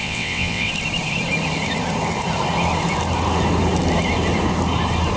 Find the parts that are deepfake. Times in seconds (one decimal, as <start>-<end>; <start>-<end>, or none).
0.0-0.7